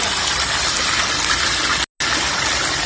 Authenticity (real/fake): real